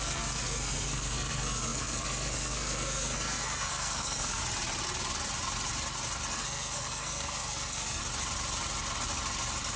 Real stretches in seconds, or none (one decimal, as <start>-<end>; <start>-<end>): 4.4-6.3; 8.0-9.8